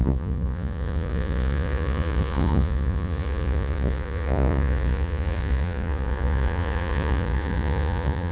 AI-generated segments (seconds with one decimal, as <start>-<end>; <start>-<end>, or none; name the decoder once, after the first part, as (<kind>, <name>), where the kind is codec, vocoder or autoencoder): 0.0-8.3 (vocoder, Vocos)